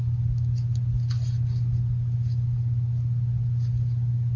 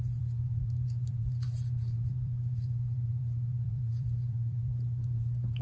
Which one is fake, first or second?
second